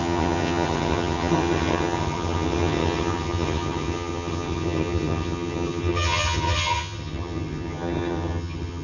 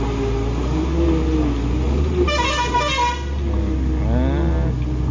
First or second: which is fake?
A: first